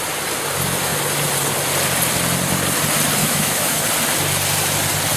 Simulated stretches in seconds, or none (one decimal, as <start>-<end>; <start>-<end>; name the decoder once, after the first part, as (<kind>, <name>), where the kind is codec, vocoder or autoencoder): 3.2-3.8 (autoencoder, DAC-VAE)